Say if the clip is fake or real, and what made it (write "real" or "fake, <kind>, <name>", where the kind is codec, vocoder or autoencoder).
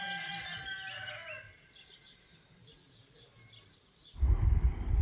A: real